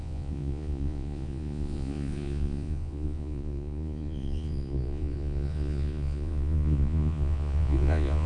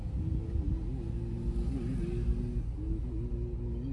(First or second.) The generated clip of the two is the first